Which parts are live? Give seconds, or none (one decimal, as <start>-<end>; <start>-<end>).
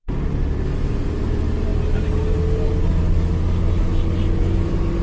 0.0-5.0